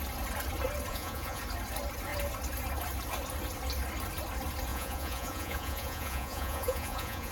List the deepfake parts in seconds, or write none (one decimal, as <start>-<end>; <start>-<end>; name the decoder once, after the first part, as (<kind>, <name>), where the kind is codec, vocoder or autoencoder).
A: 0.9-1.4 (vocoder, Vocos); 4.7-7.3